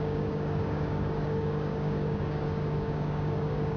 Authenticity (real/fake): fake